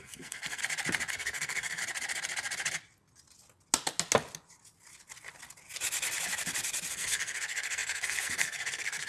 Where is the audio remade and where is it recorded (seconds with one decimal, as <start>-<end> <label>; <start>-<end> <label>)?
0.0-0.6 remade; 0.6-1.1 recorded; 1.1-1.8 remade; 1.8-6.9 recorded; 6.9-9.1 remade